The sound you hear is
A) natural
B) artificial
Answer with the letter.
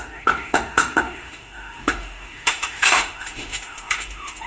B